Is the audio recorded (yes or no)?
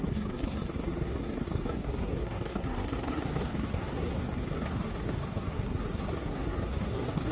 no